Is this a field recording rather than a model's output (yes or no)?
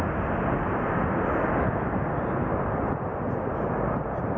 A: yes